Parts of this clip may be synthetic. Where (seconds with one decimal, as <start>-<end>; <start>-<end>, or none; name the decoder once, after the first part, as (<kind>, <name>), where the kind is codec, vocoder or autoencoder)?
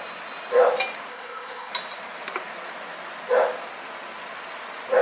1.1-1.7 (codec, ZipCodec)